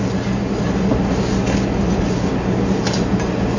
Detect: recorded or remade recorded